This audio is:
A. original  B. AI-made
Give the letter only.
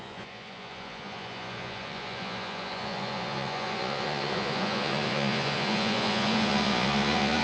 B